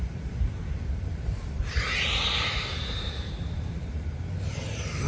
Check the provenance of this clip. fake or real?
fake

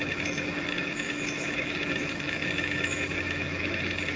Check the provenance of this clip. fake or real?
fake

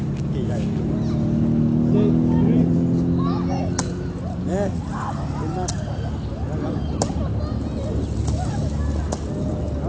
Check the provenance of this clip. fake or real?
real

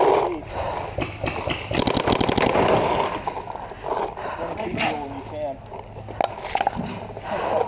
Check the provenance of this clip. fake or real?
real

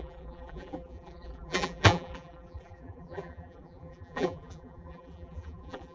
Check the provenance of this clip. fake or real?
fake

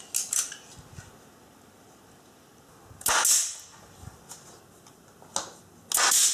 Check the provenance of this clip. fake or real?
real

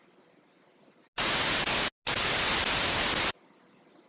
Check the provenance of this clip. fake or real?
real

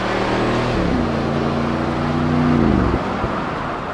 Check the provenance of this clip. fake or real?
real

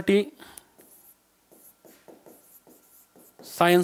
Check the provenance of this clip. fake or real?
real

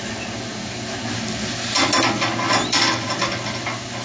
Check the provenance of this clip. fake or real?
real